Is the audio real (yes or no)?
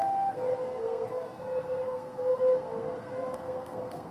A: no